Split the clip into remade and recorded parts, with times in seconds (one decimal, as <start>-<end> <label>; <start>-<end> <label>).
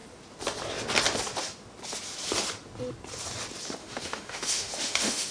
0.0-3.8 recorded; 3.8-5.3 remade